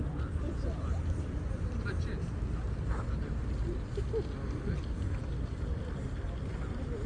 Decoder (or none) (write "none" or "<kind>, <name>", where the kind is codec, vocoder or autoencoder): none